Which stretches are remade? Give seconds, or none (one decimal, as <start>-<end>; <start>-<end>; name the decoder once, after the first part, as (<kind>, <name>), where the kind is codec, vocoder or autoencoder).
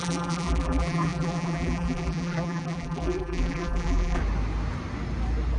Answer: 0.0-4.2 (vocoder, BigVGAN v2)